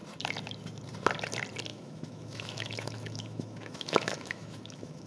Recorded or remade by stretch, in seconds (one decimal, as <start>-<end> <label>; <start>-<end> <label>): 0.0-1.7 recorded; 1.7-5.1 remade